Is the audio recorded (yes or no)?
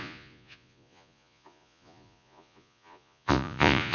no